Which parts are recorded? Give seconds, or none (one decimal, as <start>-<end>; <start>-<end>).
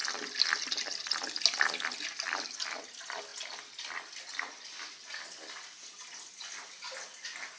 0.0-7.6